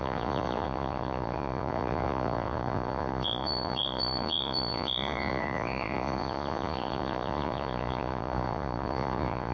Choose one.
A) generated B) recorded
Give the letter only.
A